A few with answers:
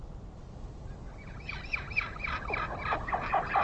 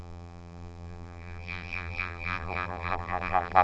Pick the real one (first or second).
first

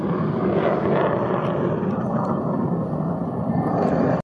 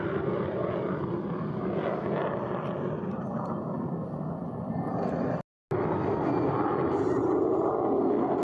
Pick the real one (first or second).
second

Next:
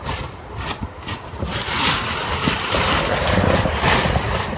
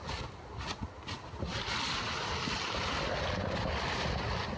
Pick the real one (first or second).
second